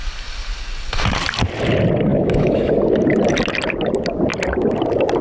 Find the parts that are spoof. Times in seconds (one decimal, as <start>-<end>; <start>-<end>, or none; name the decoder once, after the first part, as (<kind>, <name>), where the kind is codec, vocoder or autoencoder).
2.1-2.7 (autoencoder, DAC-VAE)